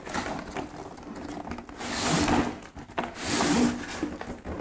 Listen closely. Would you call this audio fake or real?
real